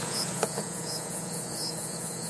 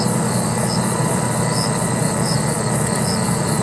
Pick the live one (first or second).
second